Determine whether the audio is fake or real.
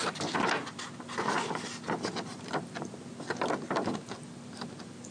real